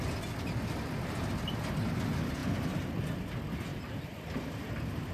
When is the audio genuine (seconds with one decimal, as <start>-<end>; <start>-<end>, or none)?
0.0-2.4; 2.9-3.7; 4.4-5.1